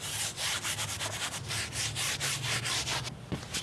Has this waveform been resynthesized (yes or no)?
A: yes